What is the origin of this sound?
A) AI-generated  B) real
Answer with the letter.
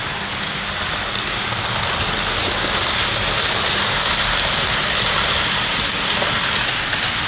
B